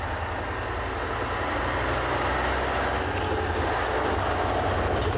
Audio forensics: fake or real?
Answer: real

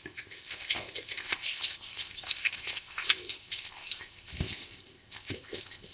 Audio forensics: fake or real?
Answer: fake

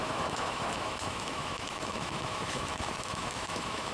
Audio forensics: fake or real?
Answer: fake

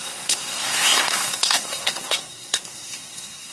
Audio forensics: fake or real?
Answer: fake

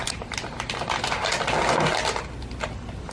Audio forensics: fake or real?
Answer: real